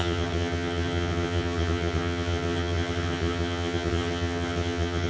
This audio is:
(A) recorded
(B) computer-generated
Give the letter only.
B